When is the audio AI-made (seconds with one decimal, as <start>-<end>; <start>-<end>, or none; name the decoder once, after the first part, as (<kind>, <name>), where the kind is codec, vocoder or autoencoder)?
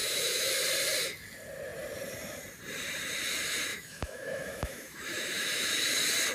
0.0-0.6 (autoencoder, DAC-VAE); 3.7-5.7